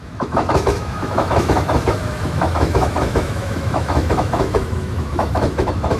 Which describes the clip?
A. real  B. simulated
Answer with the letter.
B